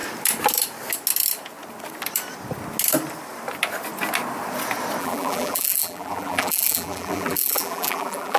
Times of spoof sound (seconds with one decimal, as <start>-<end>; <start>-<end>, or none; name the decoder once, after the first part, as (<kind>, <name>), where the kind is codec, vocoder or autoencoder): 5.0-8.4 (vocoder, BigVGAN v2)